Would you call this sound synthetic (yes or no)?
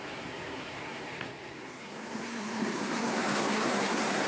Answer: yes